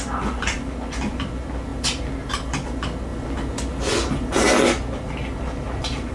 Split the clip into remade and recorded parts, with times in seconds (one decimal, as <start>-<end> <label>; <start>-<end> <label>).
0.0-6.1 recorded